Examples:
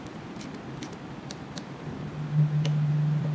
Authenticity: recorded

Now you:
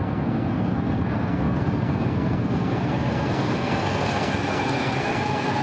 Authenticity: remade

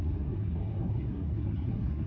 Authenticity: remade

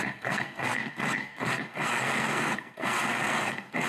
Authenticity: remade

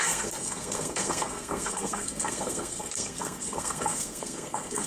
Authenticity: remade